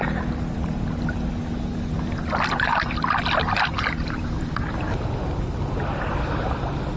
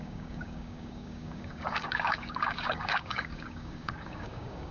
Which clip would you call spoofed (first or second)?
second